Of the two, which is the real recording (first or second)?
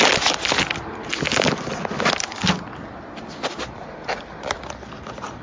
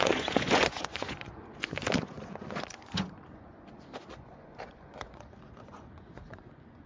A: first